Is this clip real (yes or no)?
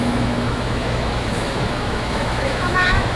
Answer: no